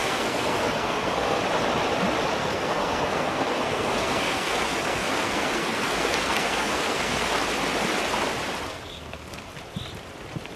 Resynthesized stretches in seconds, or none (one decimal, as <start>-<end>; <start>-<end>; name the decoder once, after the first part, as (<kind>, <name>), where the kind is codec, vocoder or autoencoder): 0.0-1.4 (codec, SNAC); 2.4-7.4; 8.7-9.5